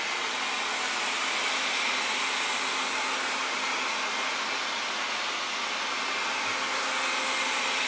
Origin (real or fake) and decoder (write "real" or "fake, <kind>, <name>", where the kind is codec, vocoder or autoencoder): real